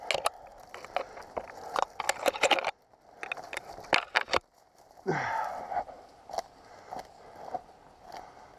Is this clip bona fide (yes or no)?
yes